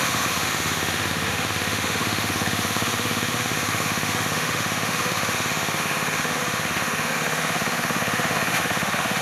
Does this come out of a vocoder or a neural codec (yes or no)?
yes